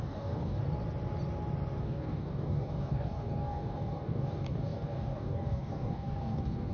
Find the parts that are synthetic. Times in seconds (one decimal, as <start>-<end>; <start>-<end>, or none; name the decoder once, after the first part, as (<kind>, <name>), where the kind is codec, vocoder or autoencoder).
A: 0.0-0.6 (codec, DAC); 1.8-6.7